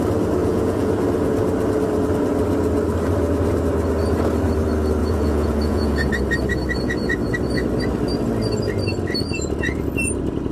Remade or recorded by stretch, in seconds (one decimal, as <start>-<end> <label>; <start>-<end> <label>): 0.0-0.4 recorded; 0.4-0.9 remade; 0.9-5.0 recorded; 5.0-6.1 remade; 6.1-10.5 recorded